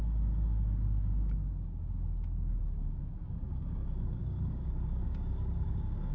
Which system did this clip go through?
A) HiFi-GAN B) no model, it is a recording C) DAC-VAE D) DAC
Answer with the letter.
D